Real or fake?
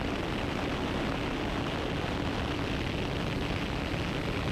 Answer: real